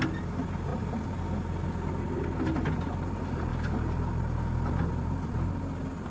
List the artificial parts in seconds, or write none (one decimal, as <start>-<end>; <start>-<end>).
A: none